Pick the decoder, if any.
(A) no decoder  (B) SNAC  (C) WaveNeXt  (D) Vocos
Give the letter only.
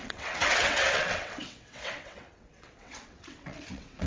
C